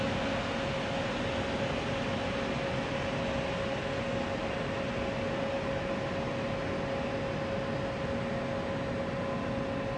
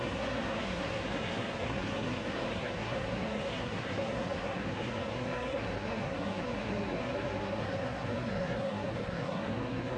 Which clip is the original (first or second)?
first